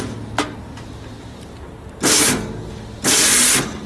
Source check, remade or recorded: recorded